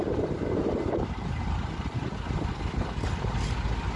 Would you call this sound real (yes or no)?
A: yes